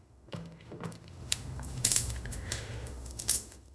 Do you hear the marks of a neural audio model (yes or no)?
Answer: yes